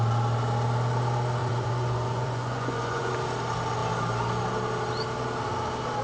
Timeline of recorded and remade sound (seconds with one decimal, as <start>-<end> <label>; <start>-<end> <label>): 0.0-1.4 recorded; 1.4-3.1 remade; 3.1-6.0 recorded